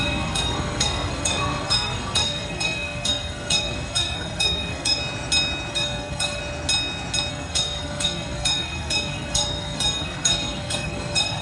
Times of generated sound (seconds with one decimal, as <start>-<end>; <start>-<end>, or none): 0.0-5.0; 5.7-6.4; 7.3-11.4